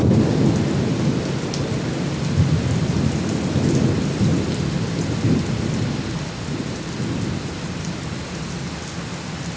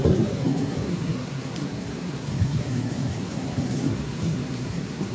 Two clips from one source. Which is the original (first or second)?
first